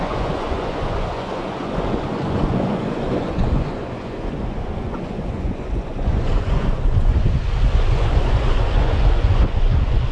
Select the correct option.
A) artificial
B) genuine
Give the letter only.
A